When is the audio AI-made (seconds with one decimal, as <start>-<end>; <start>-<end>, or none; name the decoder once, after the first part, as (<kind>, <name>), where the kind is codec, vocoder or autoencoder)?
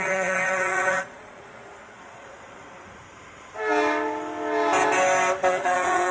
0.0-2.6 (vocoder, Vocos); 5.5-6.1